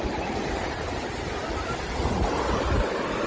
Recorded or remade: recorded